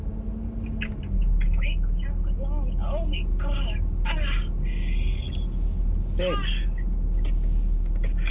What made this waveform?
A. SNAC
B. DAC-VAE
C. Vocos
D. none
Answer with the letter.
D